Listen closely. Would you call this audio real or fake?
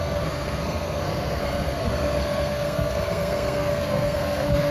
fake